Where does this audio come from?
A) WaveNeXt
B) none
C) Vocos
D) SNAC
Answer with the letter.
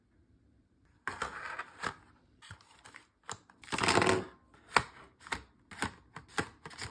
B